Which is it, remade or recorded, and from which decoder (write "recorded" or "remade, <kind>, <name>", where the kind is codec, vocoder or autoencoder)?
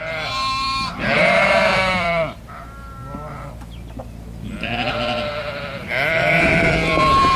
remade, vocoder, BigVGAN v2